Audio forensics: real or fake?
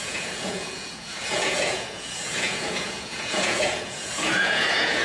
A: fake